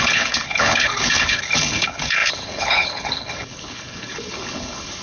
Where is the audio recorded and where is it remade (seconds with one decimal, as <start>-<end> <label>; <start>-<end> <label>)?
0.0-5.0 remade